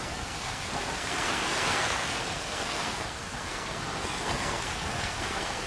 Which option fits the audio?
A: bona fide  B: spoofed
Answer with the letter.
B